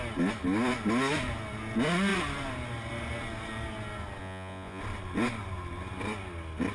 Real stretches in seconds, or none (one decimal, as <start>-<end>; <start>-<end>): 0.0-4.2; 4.8-6.7